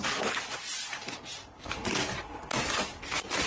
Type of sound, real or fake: real